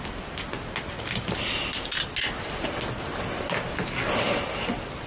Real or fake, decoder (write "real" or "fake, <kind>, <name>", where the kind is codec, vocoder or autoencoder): real